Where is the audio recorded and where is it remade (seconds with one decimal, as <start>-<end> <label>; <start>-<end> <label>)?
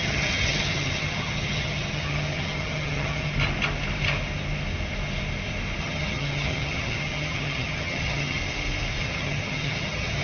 0.0-3.3 remade; 3.3-5.8 recorded; 5.8-8.4 remade; 8.4-9.0 recorded; 9.0-10.2 remade